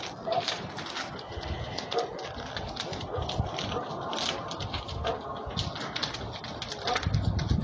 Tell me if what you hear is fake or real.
real